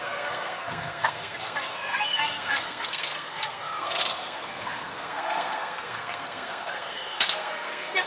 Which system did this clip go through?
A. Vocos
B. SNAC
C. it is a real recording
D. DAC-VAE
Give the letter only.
B